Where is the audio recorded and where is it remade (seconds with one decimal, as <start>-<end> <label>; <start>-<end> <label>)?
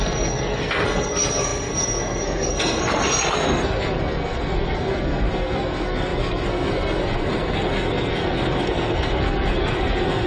0.0-10.3 remade